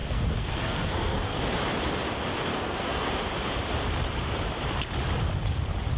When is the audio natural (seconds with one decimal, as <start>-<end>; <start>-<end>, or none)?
1.4-2.5; 3.1-6.0